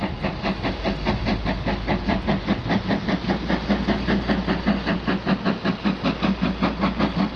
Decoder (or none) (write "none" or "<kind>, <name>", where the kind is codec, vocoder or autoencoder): none